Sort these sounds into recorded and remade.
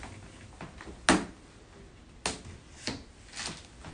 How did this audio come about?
recorded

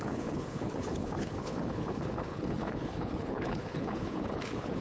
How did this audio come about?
remade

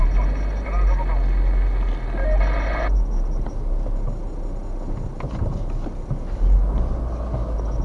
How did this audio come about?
recorded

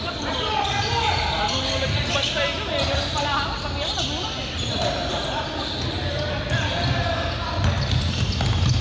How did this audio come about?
recorded